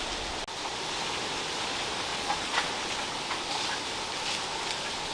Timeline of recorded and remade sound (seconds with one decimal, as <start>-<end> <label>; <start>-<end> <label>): 0.0-2.1 recorded; 2.1-2.7 remade; 2.7-5.1 recorded